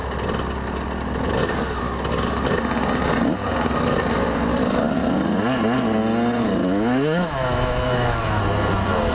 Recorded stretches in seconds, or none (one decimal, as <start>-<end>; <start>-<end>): 0.0-6.6; 8.4-9.1